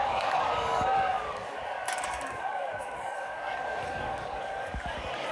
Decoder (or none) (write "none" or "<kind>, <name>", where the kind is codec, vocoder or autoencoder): codec, DAC